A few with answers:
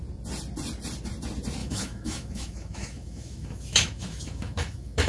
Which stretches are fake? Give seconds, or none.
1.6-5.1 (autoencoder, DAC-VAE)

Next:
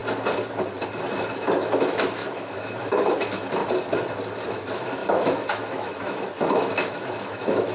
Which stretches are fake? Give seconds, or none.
1.8-3.6 (autoencoder, DAC-VAE); 4.5-7.7

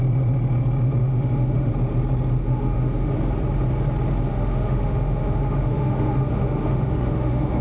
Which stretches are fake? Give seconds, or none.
1.0-1.7 (autoencoder, DAC-VAE); 2.4-3.1; 4.3-7.6